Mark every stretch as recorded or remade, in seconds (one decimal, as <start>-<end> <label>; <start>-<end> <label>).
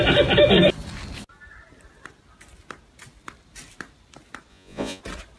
0.0-4.5 recorded; 4.5-5.0 remade; 5.0-5.4 recorded